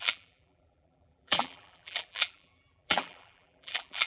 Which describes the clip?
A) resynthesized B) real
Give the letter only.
A